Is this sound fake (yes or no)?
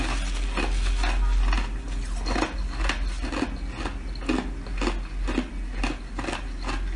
no